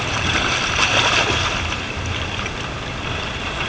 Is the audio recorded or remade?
remade